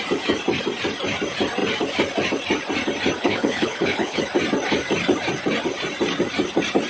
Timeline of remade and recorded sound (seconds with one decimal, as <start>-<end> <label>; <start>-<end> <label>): 0.0-3.2 recorded; 3.2-4.2 remade; 4.2-6.9 recorded